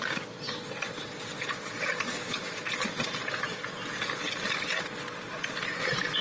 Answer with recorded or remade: recorded